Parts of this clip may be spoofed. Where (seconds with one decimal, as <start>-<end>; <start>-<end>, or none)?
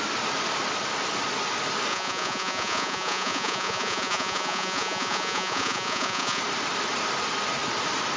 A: 1.9-6.4